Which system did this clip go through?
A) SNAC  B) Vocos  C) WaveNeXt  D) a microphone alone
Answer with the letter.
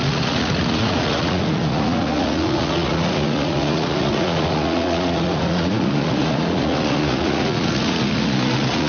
B